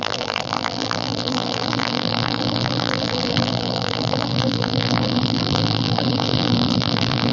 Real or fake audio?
fake